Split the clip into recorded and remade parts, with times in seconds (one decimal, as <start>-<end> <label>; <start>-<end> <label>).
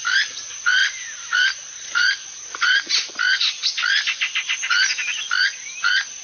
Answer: 0.0-0.8 recorded; 0.8-3.1 remade; 3.1-6.2 recorded